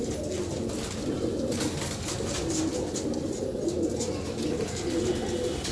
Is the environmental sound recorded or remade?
recorded